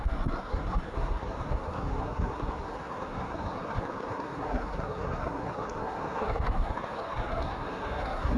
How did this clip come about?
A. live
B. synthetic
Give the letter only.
B